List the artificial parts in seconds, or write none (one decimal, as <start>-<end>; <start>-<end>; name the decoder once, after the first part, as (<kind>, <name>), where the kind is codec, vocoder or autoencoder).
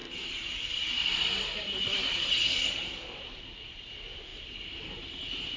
0.0-5.6 (vocoder, BigVGAN v2)